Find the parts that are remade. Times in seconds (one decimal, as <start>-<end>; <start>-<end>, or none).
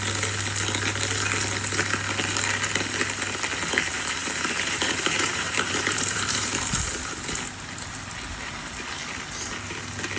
4.2-6.6